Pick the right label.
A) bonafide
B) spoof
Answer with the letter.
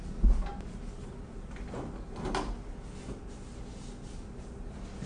A